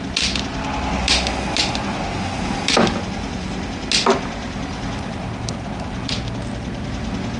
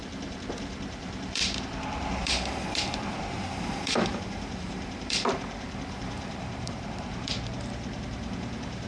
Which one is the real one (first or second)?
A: first